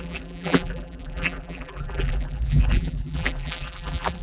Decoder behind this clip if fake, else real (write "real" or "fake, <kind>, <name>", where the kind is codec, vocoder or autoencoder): fake, vocoder, BigVGAN v2